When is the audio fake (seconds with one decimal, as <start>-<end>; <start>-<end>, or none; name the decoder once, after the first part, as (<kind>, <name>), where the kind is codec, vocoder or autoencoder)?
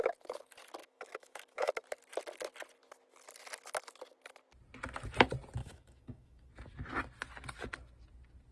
0.8-1.7 (autoencoder, DAC-VAE); 5.6-6.5